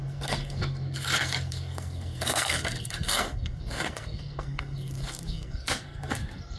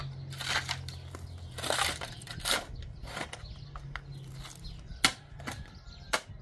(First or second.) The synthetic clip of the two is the first